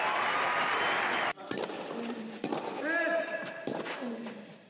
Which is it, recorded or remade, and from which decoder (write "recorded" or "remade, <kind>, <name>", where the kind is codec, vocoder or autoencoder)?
recorded